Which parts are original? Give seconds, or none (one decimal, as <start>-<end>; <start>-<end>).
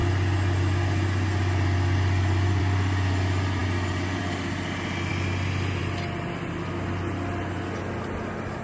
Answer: 0.0-8.6